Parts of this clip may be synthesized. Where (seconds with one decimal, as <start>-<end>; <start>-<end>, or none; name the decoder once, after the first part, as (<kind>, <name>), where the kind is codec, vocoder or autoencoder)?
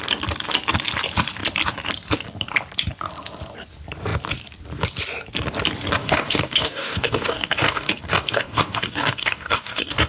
6.0-10.1 (codec, DAC)